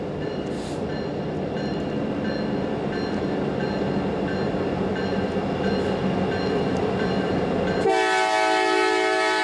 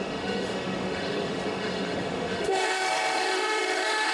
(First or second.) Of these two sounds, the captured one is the first